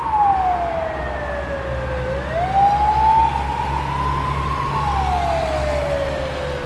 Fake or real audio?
real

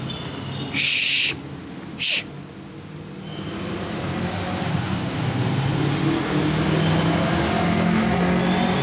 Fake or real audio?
real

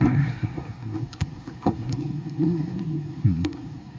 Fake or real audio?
fake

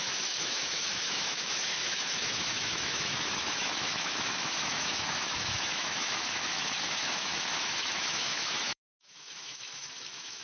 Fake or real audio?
fake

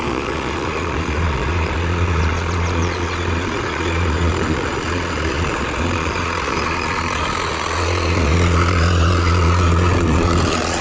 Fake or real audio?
fake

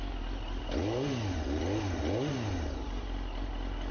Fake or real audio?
real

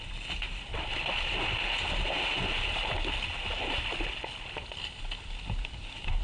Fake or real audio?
real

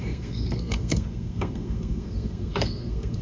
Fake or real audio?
fake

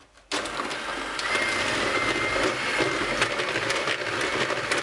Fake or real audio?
real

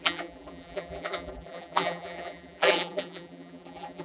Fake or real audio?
fake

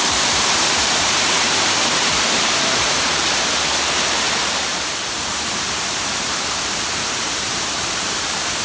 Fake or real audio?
fake